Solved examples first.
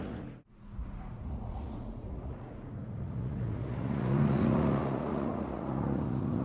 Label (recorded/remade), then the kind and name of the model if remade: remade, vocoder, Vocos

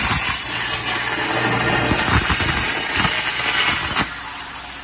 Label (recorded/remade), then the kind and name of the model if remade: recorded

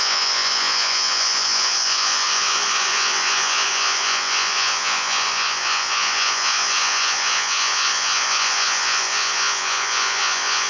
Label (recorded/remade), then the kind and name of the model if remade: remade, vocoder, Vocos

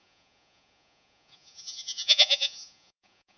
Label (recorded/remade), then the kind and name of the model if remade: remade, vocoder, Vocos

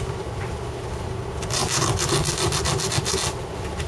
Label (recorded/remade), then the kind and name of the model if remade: recorded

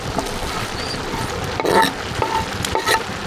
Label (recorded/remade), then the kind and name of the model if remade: recorded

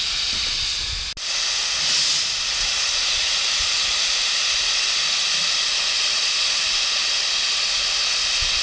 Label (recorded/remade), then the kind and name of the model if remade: recorded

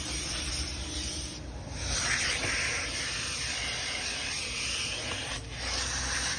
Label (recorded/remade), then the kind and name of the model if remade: recorded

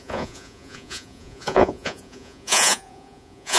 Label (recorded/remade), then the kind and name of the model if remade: remade, vocoder, Vocos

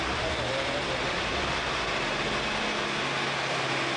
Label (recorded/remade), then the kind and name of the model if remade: recorded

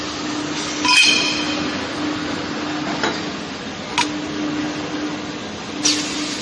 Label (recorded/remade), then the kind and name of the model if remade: recorded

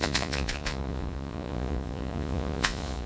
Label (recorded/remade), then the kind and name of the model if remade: remade, vocoder, Vocos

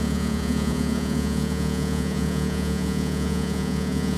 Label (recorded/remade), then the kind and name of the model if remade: remade, vocoder, Vocos